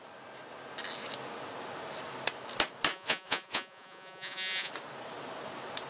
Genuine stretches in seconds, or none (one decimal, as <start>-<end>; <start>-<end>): 0.0-2.9; 4.7-5.9